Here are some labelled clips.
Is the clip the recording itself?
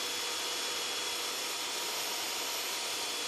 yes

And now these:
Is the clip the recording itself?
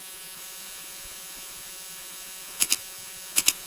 no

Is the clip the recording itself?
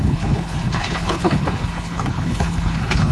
no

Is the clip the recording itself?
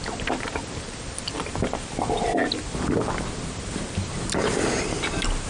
yes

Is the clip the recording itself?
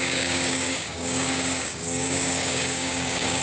no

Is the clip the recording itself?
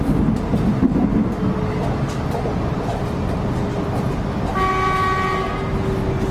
yes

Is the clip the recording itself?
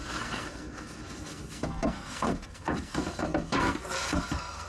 no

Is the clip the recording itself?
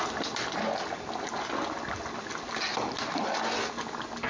yes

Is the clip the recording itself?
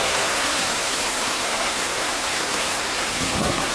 no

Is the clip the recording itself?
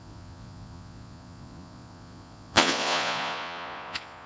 no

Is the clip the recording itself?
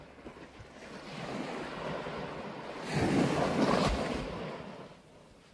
yes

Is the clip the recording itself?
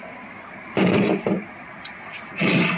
yes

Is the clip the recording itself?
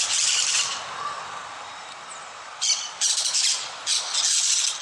no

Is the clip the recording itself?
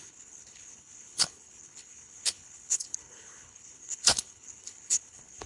no